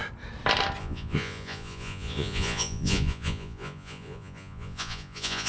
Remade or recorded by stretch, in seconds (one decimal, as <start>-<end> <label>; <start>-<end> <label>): 0.0-0.8 recorded; 0.8-5.5 remade